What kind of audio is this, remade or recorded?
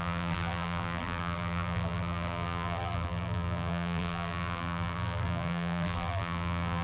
remade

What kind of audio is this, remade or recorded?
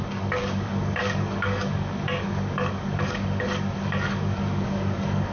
remade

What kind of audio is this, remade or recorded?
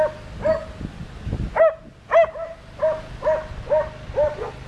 recorded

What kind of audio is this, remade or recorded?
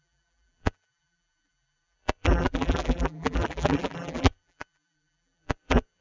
remade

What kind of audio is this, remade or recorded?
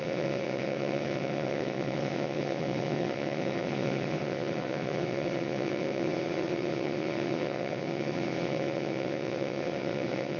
remade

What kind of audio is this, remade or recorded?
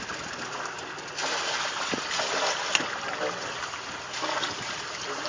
recorded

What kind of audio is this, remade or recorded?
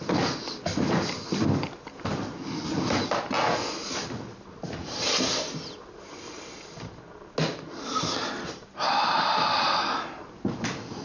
recorded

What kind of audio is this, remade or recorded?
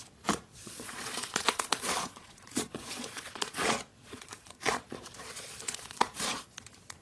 remade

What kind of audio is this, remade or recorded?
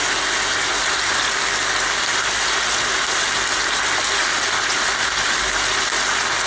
recorded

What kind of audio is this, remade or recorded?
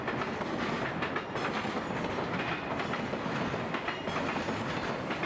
recorded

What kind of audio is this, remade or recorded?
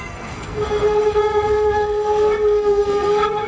remade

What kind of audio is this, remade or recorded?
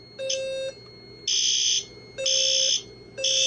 recorded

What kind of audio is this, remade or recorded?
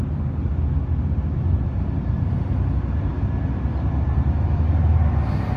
recorded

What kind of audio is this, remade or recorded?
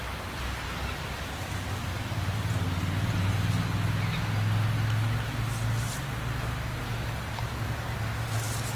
recorded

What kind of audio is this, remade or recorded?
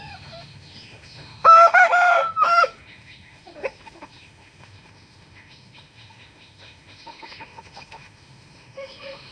remade